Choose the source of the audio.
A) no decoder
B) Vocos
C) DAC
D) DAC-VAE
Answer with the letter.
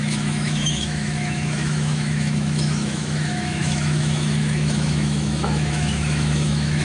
D